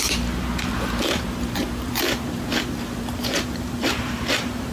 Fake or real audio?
fake